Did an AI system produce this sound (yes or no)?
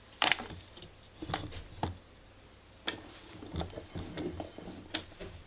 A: no